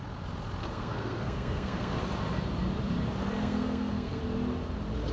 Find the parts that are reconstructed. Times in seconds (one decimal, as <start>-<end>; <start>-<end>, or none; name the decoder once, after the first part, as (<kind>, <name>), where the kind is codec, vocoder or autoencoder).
0.6-2.0 (codec, SNAC); 3.4-4.2